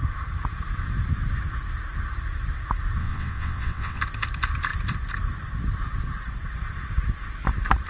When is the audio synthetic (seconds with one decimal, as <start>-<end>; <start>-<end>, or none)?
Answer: 3.0-4.0